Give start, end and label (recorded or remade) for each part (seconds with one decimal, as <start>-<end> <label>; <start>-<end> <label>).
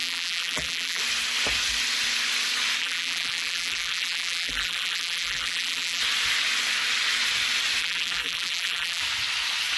0.0-1.0 remade; 1.0-2.8 recorded; 2.8-6.0 remade; 6.0-7.8 recorded; 7.8-9.0 remade; 9.0-9.8 recorded